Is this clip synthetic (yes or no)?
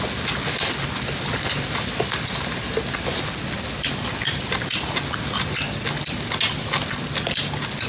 no